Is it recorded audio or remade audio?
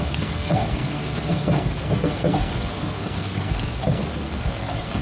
remade